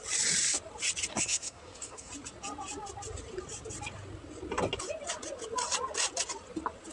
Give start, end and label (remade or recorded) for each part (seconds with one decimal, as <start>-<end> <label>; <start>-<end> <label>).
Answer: 0.0-1.1 recorded; 1.1-2.1 remade; 2.1-6.9 recorded